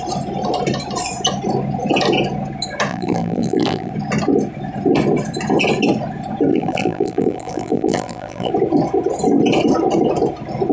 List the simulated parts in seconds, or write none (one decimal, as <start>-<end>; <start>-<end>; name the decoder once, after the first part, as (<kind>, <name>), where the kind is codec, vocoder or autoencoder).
2.9-3.9 (vocoder, BigVGAN v2); 6.5-8.5